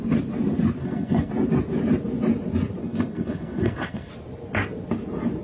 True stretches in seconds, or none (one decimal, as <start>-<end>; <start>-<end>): 0.0-0.8; 1.3-2.8; 4.1-5.4